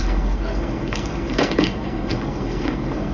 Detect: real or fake fake